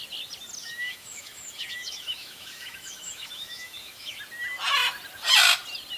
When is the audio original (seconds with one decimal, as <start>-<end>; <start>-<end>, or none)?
0.0-0.6; 4.2-6.0